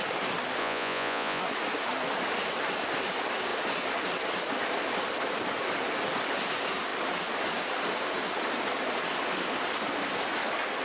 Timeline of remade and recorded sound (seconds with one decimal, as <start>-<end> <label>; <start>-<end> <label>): 0.0-0.6 recorded; 0.6-1.4 remade; 1.4-10.8 recorded

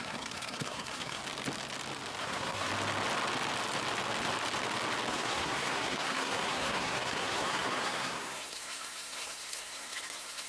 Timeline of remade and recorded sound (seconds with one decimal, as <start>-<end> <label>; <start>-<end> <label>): 0.0-1.2 remade; 1.2-2.2 recorded; 2.2-2.7 remade; 2.7-5.1 recorded; 5.1-10.5 remade

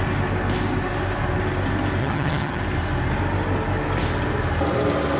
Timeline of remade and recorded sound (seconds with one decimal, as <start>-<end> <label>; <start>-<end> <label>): 0.0-2.0 recorded; 2.0-2.6 remade; 2.6-5.2 recorded